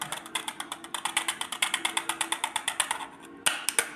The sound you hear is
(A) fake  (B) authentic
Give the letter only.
B